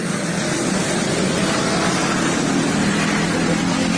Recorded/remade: recorded